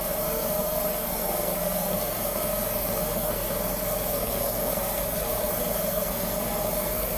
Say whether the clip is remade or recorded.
remade